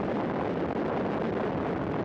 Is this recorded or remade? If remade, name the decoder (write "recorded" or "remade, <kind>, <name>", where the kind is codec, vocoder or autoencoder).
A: remade, vocoder, BigVGAN v2